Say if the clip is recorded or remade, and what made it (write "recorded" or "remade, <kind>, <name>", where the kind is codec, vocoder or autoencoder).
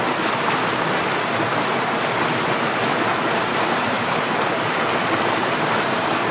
recorded